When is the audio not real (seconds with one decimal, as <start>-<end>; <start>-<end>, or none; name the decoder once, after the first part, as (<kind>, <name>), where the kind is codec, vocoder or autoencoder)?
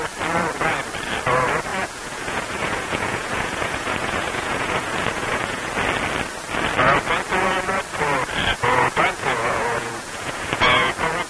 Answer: 1.7-5.7 (vocoder, Vocos); 8.5-10.9